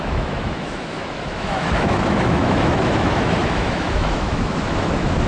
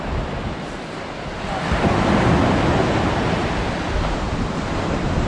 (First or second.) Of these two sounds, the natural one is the second